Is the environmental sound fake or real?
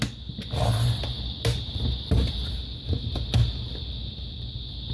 real